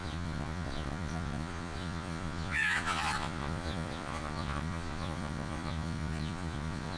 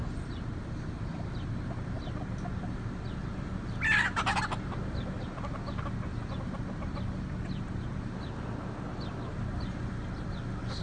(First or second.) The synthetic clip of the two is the first